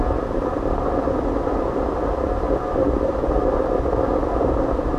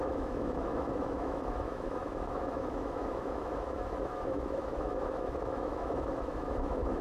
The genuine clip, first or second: first